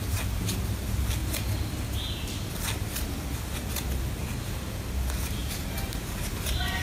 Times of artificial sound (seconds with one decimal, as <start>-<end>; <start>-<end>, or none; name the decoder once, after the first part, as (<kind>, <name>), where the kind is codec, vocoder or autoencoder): 5.4-6.8 (vocoder, BigVGAN v2)